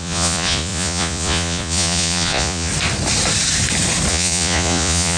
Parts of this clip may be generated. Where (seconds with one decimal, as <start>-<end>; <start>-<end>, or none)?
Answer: 0.0-2.7; 4.1-5.2